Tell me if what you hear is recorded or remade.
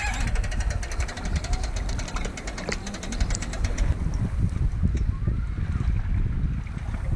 recorded